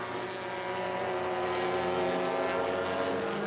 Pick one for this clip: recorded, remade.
recorded